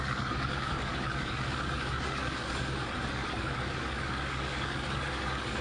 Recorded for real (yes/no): no